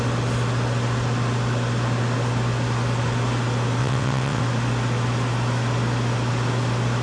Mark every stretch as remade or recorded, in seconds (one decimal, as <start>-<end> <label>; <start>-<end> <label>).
0.0-3.8 recorded; 3.8-4.4 remade; 4.4-7.0 recorded